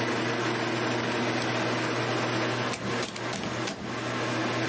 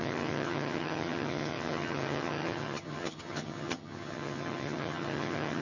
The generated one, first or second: second